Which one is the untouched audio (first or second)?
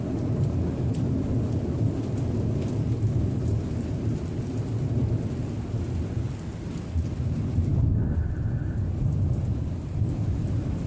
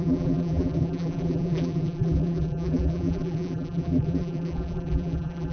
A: first